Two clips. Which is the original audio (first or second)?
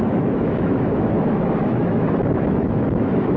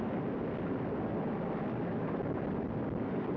second